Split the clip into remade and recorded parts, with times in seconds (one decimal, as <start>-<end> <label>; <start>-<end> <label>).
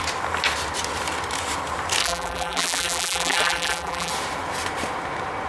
0.0-2.0 recorded; 2.0-4.1 remade; 4.1-5.5 recorded